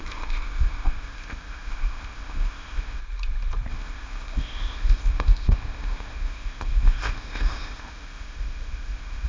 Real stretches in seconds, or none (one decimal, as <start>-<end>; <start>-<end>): 3.0-3.7